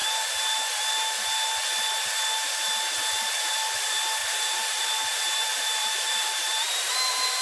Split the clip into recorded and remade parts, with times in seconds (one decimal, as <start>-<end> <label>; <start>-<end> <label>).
0.0-3.1 recorded; 3.1-7.4 remade